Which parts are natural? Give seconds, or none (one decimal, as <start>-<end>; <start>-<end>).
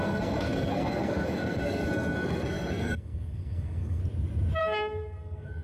4.0-4.6